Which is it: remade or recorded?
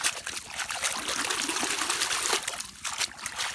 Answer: recorded